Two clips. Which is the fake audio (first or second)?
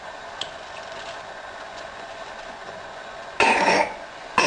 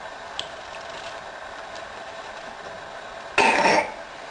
first